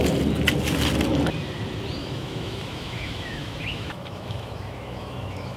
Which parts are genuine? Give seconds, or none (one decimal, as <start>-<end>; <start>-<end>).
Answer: 0.0-2.0